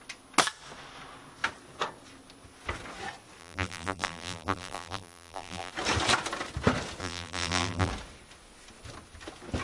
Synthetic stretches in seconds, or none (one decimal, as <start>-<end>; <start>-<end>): 3.4-5.7; 7.0-7.9